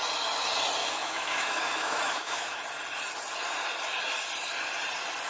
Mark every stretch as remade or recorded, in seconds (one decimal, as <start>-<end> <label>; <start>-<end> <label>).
0.0-0.8 recorded; 0.8-2.6 remade; 2.6-5.3 recorded